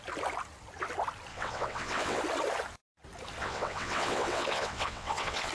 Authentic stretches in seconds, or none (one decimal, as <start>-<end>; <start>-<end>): 0.0-1.3; 2.2-3.4